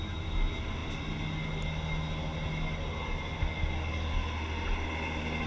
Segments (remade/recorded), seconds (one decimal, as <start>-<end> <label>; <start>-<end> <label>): 0.0-5.5 recorded